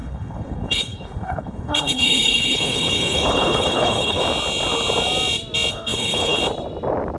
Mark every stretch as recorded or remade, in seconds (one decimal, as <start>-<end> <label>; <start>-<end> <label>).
0.0-4.2 remade; 4.2-5.7 recorded; 5.7-6.4 remade; 6.4-7.2 recorded